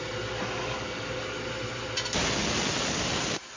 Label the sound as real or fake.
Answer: real